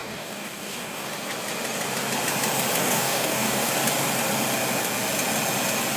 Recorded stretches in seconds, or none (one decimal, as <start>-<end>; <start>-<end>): 1.1-2.8; 3.7-6.0